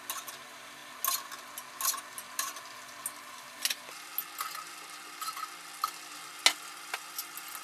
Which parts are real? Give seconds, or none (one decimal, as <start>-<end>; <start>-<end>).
0.0-7.6